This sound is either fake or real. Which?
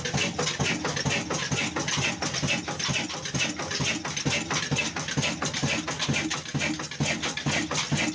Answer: real